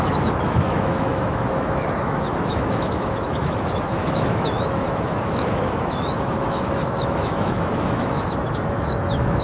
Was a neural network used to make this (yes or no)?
yes